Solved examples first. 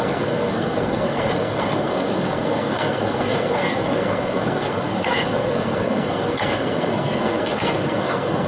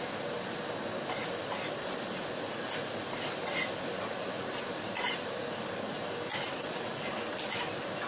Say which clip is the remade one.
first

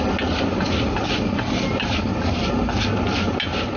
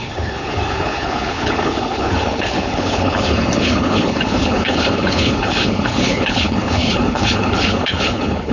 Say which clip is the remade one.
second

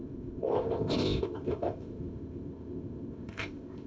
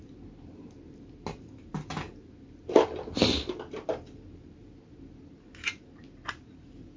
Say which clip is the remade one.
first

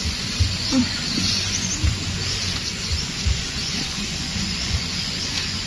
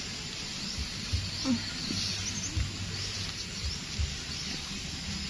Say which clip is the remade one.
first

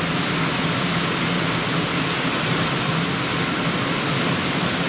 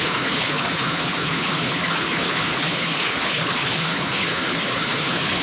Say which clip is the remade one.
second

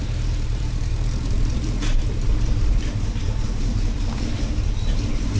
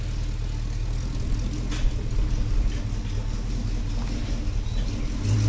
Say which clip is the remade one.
first